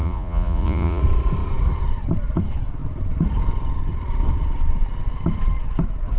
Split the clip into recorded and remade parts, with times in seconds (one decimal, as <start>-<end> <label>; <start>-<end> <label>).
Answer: 0.0-1.0 remade; 1.0-6.2 recorded